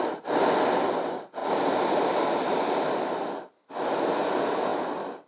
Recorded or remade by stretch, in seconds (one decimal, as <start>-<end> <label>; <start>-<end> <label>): 0.0-5.3 recorded